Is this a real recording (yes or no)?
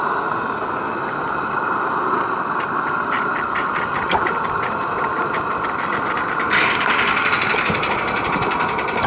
yes